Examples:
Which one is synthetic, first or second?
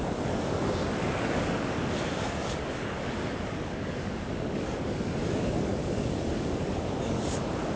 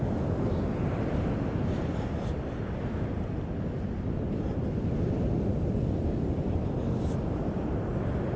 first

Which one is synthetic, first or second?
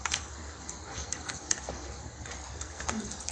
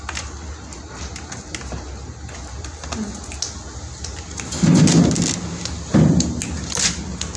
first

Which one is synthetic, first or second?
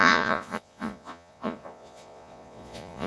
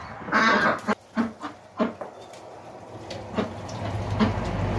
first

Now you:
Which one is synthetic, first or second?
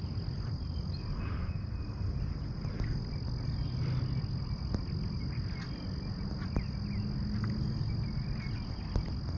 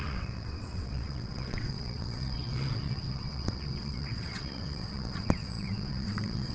second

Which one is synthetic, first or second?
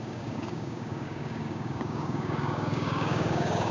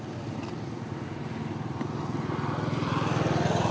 first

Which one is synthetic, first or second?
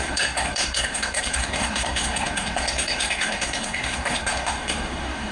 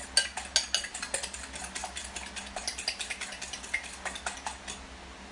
first